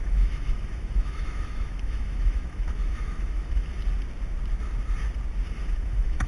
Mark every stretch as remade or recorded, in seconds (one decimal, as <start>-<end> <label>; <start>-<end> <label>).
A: 0.0-3.7 remade; 3.7-5.5 recorded; 5.5-6.3 remade